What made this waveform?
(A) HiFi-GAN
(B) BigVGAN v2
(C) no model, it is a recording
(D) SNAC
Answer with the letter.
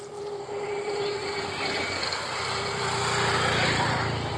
B